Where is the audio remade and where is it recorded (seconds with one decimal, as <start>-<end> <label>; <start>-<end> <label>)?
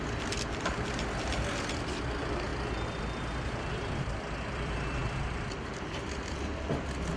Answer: 0.0-2.5 remade; 2.5-3.7 recorded; 3.7-5.0 remade; 5.0-5.8 recorded; 5.8-6.5 remade; 6.5-7.2 recorded